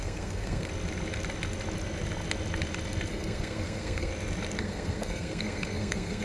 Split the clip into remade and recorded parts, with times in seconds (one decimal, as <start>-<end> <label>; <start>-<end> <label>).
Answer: 0.0-0.7 remade; 0.7-3.1 recorded; 3.1-4.1 remade; 4.1-4.6 recorded; 4.6-6.2 remade